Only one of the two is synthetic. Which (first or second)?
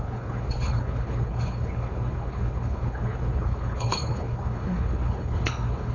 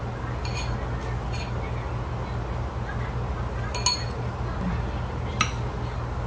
first